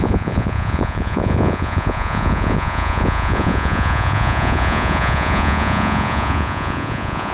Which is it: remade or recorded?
remade